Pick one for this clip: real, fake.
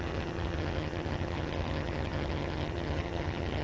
fake